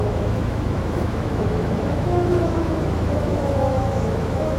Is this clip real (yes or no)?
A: no